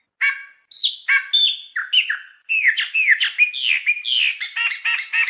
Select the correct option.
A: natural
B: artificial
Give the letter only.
A